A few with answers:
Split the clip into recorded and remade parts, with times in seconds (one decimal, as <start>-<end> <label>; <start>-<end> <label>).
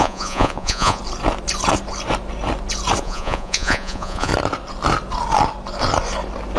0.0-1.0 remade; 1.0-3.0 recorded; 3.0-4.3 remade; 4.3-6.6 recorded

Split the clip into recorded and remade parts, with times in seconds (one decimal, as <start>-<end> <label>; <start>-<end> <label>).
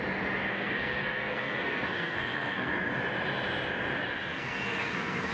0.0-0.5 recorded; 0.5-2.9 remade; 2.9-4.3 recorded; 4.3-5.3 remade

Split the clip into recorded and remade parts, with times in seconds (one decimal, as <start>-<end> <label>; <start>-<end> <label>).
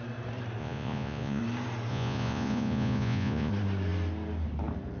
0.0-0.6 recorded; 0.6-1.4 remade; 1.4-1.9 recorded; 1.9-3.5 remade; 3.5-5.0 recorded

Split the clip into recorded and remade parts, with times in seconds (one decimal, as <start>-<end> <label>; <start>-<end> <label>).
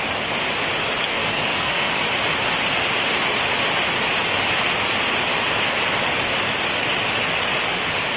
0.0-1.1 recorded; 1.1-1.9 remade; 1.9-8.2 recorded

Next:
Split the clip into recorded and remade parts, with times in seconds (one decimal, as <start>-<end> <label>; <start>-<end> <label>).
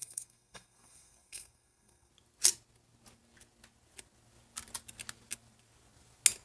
0.0-2.1 remade; 2.1-6.4 recorded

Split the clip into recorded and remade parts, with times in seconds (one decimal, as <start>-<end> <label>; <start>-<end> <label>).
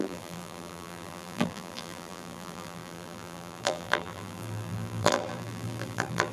0.0-6.3 remade